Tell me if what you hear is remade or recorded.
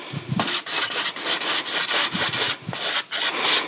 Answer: recorded